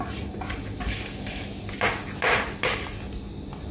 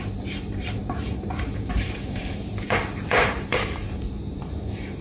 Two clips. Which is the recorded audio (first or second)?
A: first